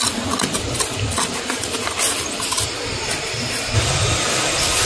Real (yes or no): yes